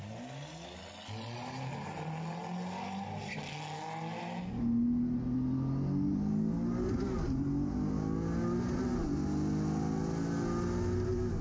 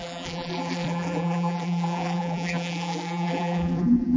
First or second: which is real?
first